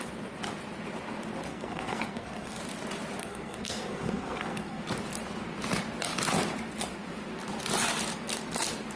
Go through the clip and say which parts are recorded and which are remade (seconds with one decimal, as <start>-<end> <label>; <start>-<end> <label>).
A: 0.0-1.5 recorded; 1.5-2.6 remade; 2.6-3.2 recorded; 3.2-4.8 remade; 4.8-9.0 recorded